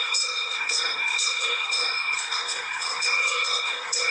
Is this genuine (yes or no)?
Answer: no